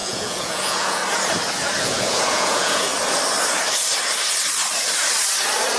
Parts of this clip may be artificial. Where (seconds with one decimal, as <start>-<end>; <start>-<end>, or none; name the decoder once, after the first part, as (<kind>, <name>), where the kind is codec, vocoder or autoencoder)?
0.0-1.0 (vocoder, Vocos); 1.8-2.9